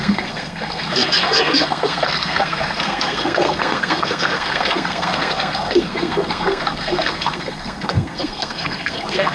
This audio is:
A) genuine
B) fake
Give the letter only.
B